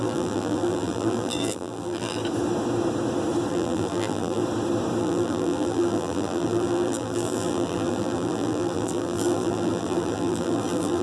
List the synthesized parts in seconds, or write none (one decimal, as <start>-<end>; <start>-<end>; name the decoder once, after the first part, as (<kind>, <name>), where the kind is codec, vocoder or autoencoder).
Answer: 0.0-2.2 (vocoder, BigVGAN v2); 3.5-4.4; 5.0-11.0